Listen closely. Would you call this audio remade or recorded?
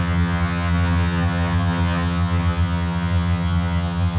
remade